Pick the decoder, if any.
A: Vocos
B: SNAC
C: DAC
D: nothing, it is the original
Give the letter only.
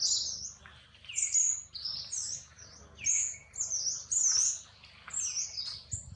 D